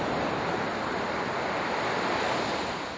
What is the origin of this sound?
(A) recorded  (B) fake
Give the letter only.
A